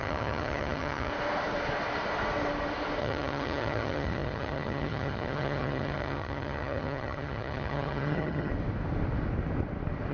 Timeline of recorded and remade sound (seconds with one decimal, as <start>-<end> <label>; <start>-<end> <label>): 0.0-1.1 remade; 1.1-3.0 recorded; 3.0-8.5 remade; 8.5-10.1 recorded